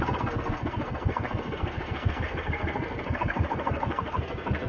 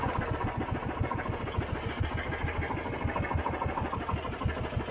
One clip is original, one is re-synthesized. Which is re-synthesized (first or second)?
first